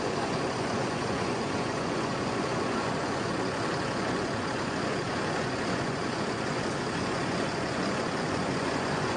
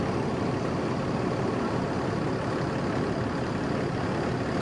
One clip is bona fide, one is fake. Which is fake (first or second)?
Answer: first